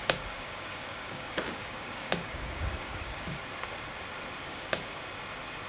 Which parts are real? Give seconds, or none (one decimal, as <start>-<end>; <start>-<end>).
3.4-4.4; 5.0-5.7